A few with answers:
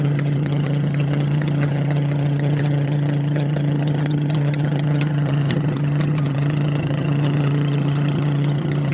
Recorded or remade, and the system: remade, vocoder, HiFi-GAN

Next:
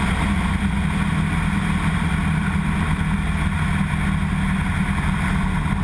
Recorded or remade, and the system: recorded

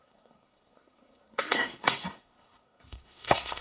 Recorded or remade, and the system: remade, codec, SNAC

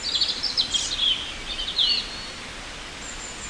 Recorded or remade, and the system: recorded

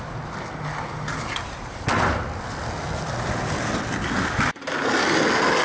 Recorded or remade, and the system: recorded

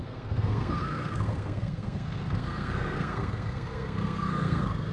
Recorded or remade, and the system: remade, codec, SNAC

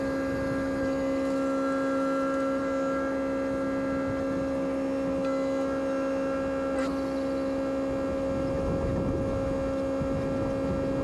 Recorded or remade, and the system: recorded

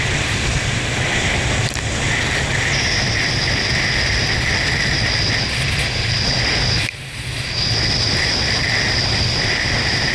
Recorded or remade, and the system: recorded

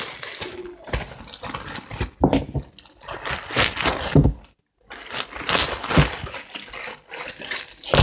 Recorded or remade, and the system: recorded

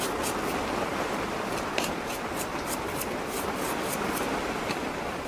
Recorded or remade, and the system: recorded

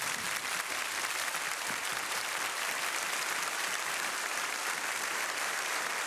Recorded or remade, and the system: remade, vocoder, BigVGAN v2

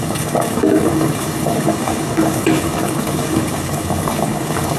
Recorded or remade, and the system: remade, codec, DAC